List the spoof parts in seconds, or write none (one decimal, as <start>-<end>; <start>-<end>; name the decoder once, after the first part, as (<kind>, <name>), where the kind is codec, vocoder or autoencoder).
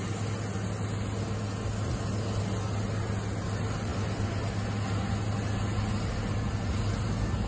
none